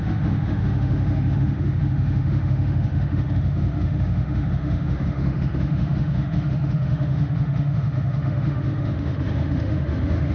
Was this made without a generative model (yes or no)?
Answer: no